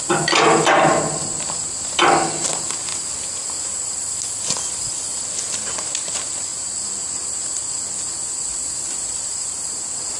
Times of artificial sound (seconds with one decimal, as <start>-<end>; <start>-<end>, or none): none